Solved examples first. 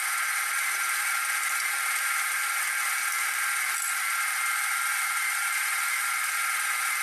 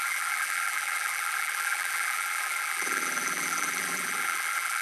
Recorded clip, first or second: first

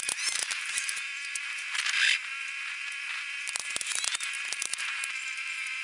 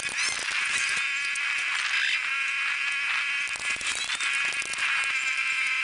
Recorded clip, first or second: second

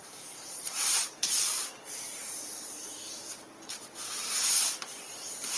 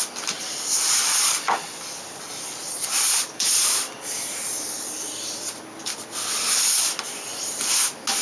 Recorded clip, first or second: second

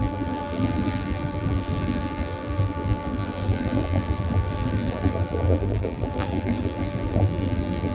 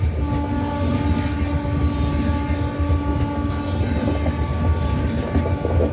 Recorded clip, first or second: second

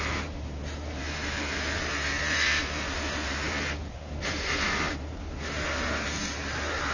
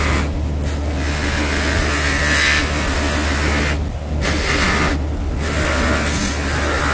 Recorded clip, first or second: second